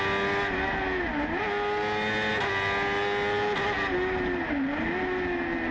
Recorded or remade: recorded